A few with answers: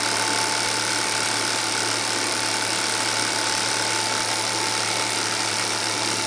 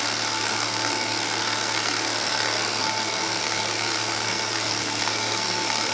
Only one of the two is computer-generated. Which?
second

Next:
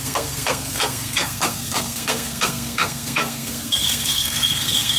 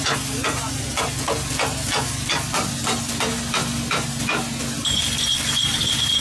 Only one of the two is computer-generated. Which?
first